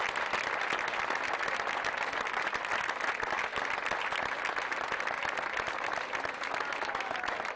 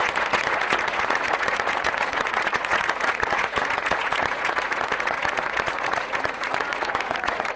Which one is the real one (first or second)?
first